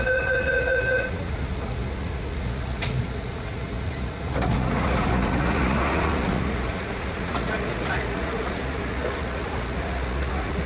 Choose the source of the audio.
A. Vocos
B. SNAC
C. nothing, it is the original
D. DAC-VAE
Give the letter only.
A